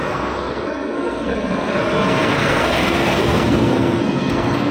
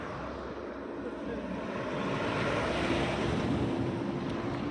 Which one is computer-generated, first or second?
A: first